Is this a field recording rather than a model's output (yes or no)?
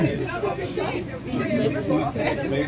no